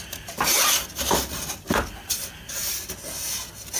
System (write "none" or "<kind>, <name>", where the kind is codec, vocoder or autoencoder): none